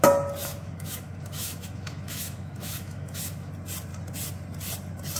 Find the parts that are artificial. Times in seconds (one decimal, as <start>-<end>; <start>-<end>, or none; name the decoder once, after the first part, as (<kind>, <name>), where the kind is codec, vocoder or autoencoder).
0.4-3.5 (autoencoder, DAC-VAE)